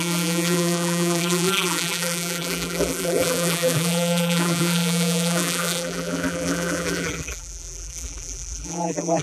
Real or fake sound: fake